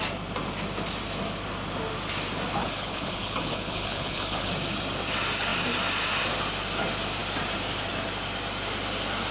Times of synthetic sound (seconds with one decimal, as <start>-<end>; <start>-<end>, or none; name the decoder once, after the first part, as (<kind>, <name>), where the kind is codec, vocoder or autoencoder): 2.6-4.5 (codec, HILCodec)